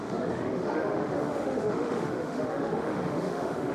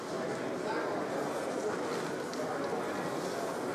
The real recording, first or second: second